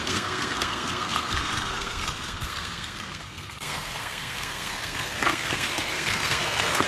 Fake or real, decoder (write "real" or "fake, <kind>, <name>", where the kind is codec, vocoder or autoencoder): fake, codec, SNAC